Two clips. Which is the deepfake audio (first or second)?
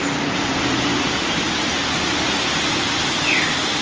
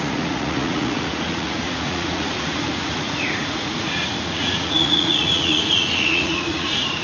second